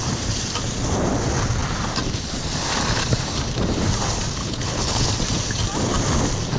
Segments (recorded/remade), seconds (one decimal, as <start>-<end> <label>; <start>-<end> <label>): 0.0-4.4 recorded; 4.4-5.1 remade; 5.1-6.6 recorded